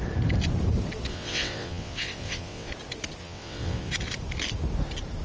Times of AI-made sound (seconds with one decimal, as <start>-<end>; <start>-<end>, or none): 1.1-2.7; 3.2-3.9